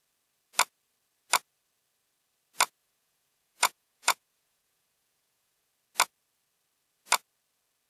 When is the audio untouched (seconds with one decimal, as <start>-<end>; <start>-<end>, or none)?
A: 0.0-2.8; 5.7-7.9